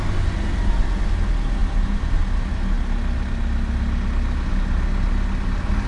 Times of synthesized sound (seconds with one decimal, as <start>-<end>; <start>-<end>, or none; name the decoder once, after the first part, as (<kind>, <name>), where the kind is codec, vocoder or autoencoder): none